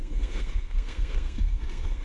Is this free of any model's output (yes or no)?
no